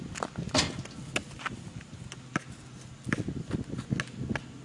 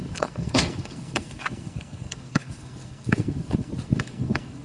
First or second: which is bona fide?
first